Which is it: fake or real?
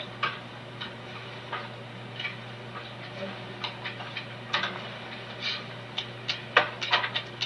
real